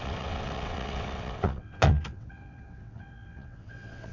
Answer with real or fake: fake